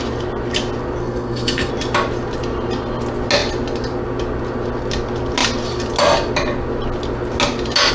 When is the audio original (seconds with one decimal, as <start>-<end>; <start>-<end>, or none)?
0.0-1.0; 1.7-7.9